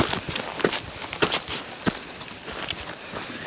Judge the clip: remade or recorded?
recorded